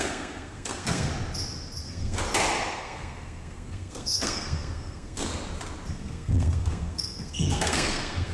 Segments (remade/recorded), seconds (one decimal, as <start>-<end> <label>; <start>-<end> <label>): 0.0-1.1 remade; 1.1-1.8 recorded; 1.8-2.2 remade; 2.2-2.8 recorded; 2.8-5.3 remade; 5.3-5.9 recorded; 5.9-8.3 remade